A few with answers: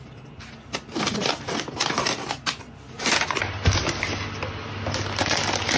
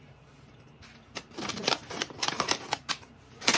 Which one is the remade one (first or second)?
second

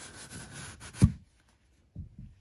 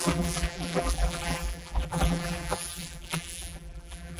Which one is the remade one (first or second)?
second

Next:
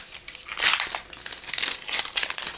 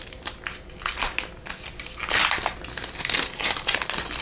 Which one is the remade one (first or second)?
first